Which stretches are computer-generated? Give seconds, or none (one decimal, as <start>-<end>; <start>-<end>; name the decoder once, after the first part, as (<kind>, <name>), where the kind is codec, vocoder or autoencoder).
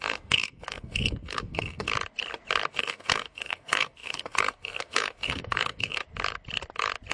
0.0-1.9 (codec, SNAC); 2.7-6.0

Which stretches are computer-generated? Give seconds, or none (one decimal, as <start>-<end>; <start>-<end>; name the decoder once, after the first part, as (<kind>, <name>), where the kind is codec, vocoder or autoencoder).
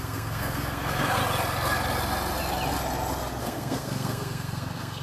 0.0-1.2 (codec, SNAC); 3.4-5.0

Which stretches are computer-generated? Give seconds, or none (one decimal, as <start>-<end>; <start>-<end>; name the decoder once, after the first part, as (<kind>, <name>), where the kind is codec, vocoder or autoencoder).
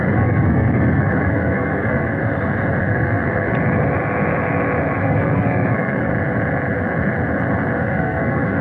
0.0-2.2 (codec, SNAC); 2.8-3.5; 5.0-6.1; 7.8-8.6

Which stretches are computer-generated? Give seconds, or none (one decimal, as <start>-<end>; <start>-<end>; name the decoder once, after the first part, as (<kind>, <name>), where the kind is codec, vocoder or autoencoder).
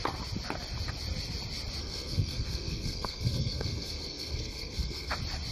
1.8-5.1 (codec, SNAC)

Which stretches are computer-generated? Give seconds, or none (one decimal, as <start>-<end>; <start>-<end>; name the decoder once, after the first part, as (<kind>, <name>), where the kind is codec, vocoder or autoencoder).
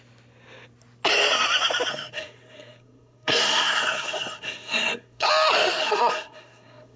1.9-5.3 (codec, SNAC); 5.8-7.0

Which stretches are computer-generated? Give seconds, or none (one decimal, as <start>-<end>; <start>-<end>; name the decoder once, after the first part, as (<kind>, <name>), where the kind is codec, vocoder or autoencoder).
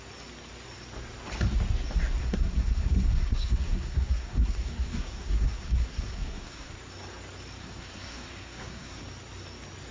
2.2-6.7 (codec, SNAC); 7.6-9.0